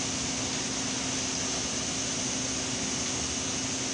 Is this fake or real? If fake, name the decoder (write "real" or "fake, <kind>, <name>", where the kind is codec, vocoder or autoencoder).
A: real